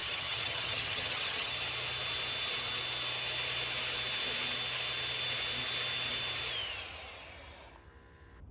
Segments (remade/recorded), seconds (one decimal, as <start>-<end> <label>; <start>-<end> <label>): 0.0-1.5 remade; 1.5-8.5 recorded